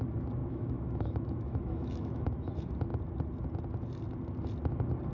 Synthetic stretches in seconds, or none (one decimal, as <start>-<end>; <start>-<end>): 0.4-2.5